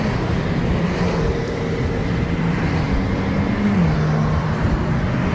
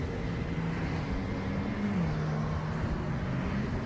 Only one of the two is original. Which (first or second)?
second